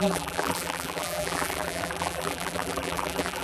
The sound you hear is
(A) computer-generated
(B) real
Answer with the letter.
A